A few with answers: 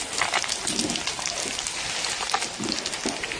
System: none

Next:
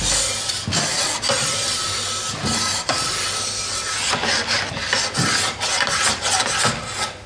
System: none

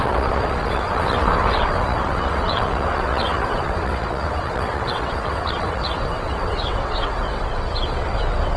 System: vocoder, WaveNeXt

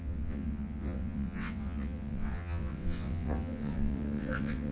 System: vocoder, WaveNeXt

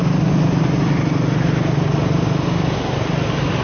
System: none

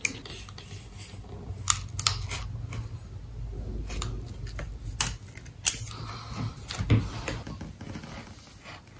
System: none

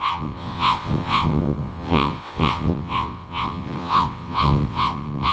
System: vocoder, WaveNeXt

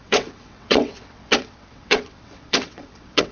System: vocoder, WaveNeXt